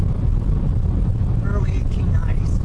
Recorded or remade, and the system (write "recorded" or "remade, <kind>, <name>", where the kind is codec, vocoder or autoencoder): recorded